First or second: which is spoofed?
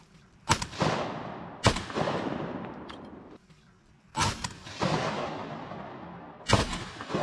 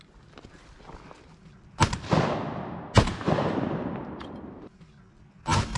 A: first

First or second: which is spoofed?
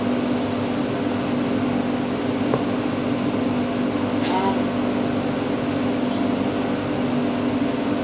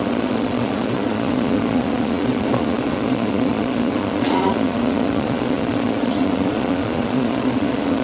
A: second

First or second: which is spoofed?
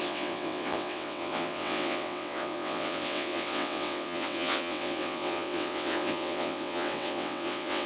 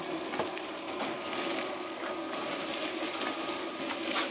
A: first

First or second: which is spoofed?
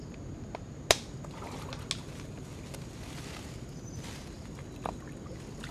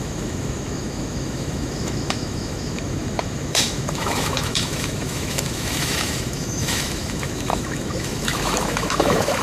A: second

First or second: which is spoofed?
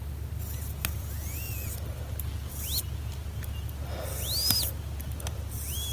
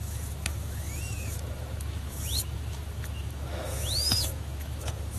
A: second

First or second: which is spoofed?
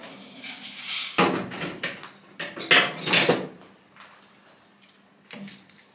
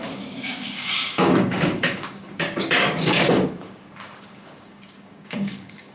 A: second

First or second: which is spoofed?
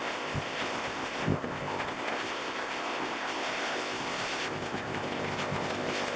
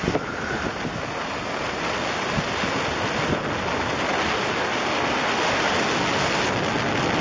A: first